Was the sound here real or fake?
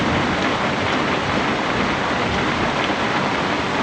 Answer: real